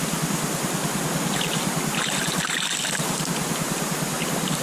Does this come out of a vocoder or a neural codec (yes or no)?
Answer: no